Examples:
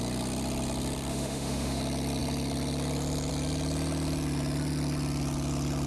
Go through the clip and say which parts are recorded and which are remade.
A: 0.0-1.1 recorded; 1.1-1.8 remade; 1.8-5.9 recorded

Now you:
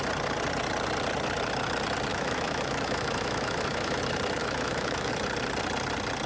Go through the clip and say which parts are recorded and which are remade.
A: 0.0-2.1 recorded; 2.1-4.0 remade; 4.0-4.4 recorded; 4.4-5.1 remade; 5.1-6.3 recorded

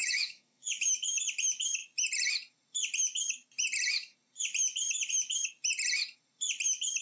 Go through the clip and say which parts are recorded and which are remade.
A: 0.0-1.2 remade; 1.2-7.0 recorded